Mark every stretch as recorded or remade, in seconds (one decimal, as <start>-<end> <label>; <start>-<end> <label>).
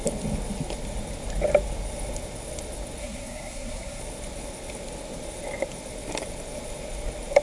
0.0-3.0 recorded; 3.0-4.0 remade; 4.0-7.4 recorded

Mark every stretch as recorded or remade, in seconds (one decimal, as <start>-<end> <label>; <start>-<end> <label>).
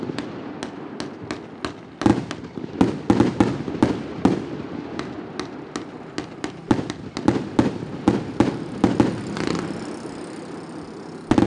0.0-11.5 recorded